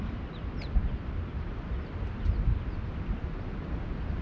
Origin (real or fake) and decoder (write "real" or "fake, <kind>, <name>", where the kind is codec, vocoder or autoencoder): real